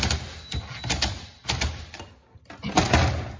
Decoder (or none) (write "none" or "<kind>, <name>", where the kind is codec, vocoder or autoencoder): none